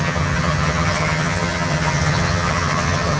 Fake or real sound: fake